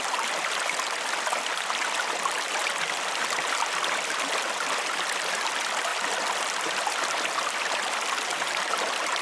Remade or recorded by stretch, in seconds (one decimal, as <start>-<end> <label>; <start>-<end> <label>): 0.0-9.2 recorded